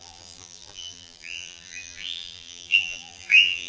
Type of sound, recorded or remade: remade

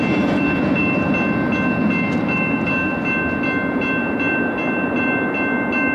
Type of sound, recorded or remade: recorded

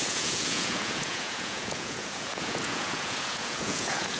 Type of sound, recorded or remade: remade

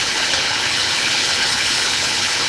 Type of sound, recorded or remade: remade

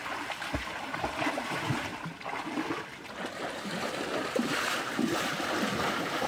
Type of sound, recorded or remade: remade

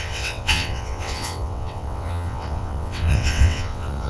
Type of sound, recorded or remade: remade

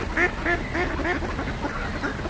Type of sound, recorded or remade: recorded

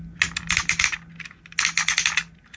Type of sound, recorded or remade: recorded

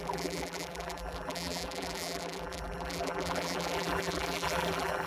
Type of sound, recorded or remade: remade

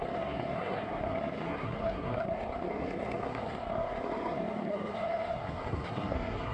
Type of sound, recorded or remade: remade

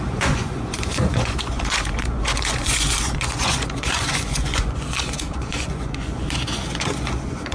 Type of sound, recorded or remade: remade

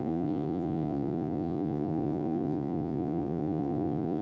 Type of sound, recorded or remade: remade